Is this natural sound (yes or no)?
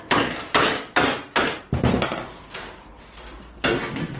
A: yes